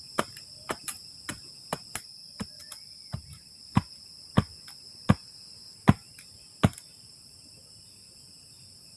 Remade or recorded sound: recorded